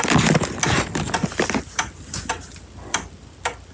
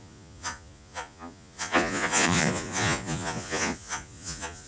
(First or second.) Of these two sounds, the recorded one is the first